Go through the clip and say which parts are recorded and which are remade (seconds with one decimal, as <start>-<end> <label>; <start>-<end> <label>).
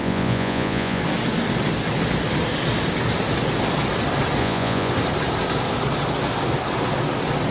0.0-1.0 remade; 1.0-4.4 recorded; 4.4-4.9 remade; 4.9-7.5 recorded